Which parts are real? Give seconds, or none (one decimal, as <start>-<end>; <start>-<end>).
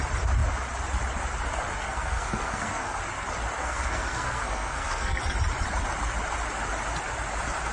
0.0-1.8; 3.0-3.6; 5.2-7.7